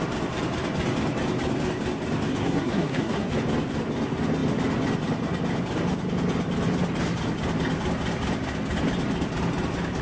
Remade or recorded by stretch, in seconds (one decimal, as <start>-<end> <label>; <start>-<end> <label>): 0.0-2.3 recorded; 2.3-3.3 remade; 3.3-10.0 recorded